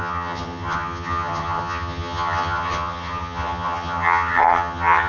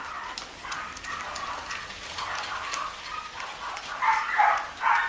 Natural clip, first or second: second